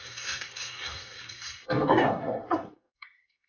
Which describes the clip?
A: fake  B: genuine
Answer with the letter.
A